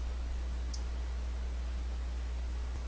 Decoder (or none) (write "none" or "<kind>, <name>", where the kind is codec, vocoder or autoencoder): none